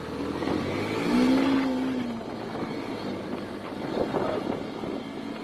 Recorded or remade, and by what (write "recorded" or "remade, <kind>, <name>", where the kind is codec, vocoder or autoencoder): recorded